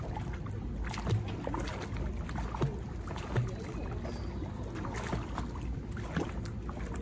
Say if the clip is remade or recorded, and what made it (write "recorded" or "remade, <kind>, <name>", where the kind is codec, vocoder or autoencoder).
recorded